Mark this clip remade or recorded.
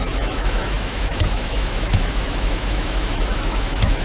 remade